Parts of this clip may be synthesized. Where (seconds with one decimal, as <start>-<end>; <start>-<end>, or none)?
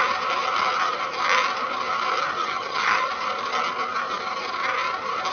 2.4-3.1